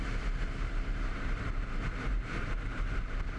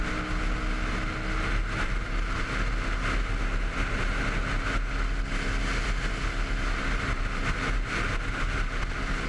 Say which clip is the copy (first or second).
first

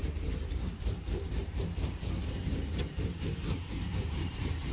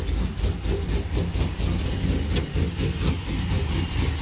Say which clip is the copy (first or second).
first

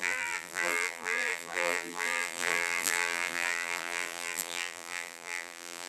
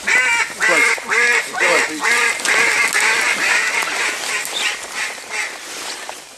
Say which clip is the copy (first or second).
first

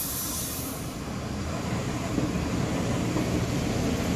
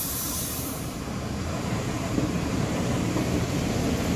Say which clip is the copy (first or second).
second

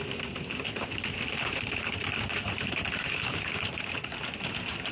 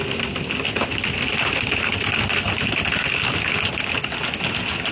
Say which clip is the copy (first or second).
first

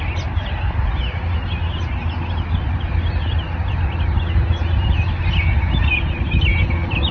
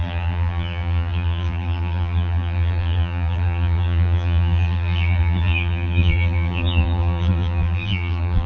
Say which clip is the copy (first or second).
second